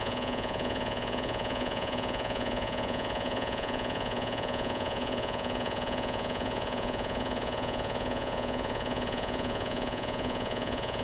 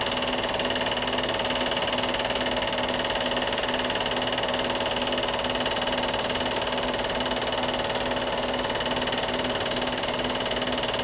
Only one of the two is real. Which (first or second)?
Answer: second